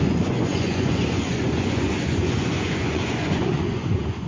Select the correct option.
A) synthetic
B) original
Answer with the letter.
A